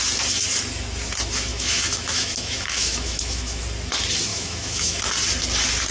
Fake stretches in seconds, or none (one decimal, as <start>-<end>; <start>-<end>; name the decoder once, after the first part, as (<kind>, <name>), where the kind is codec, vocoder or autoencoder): 1.5-3.6 (autoencoder, DAC-VAE); 4.3-5.0